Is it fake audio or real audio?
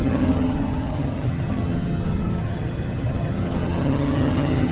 fake